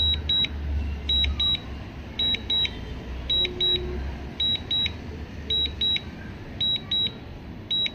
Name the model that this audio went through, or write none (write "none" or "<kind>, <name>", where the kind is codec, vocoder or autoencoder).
none